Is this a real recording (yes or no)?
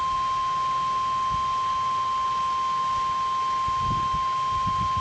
yes